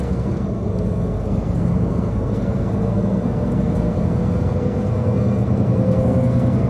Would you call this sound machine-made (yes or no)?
yes